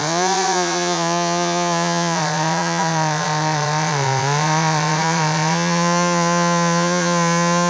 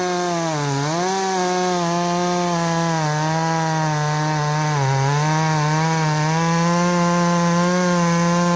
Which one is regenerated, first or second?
first